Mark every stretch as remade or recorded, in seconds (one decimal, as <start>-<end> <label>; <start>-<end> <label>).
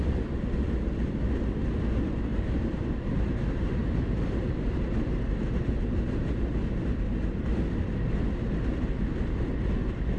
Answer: 0.0-2.3 recorded; 2.3-6.4 remade; 6.4-10.2 recorded